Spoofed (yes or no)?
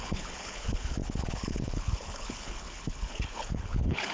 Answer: yes